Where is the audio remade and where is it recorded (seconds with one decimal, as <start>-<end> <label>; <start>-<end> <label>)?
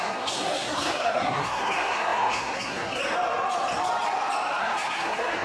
0.0-3.0 remade; 3.0-4.6 recorded; 4.6-5.4 remade